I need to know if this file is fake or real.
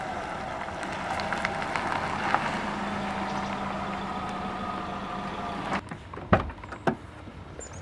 real